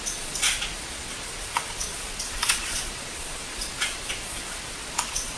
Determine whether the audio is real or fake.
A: fake